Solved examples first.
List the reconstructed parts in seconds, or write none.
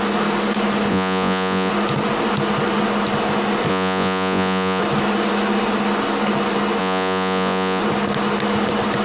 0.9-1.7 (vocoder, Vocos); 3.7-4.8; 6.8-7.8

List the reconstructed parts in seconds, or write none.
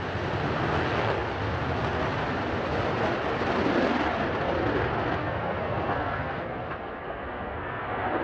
5.2-8.2 (codec, SNAC)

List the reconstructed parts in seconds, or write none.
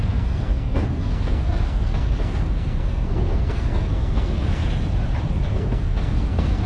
0.0-4.6 (codec, SNAC); 5.5-6.7